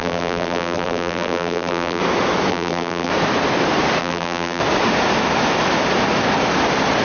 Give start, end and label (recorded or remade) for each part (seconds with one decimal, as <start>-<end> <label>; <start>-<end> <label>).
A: 0.0-2.0 remade; 2.0-2.5 recorded; 2.5-3.1 remade; 3.1-4.0 recorded; 4.0-4.6 remade; 4.6-7.0 recorded